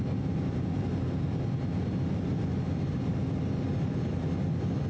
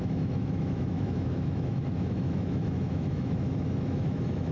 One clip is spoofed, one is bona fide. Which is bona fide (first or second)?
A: first